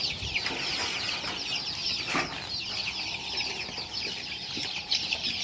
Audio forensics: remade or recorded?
recorded